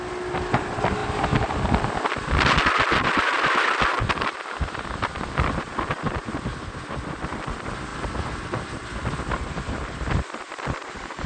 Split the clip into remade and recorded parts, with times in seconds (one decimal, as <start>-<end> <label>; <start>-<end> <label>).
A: 0.0-5.7 remade; 5.7-6.6 recorded; 6.6-7.9 remade; 7.9-9.5 recorded; 9.5-11.3 remade